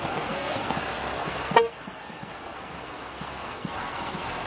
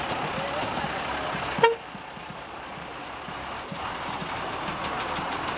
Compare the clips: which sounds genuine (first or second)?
second